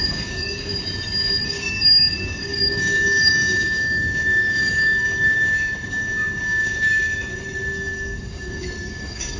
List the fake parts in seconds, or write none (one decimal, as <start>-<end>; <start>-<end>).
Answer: 0.0-0.7; 1.4-9.4